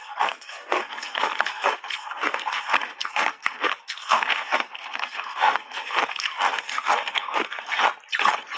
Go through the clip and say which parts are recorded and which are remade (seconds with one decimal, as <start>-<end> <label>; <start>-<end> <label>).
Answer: 0.0-7.8 remade; 7.8-8.6 recorded